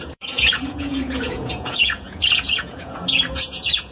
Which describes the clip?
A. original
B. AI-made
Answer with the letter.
B